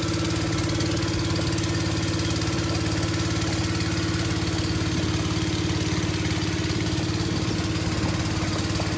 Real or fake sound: real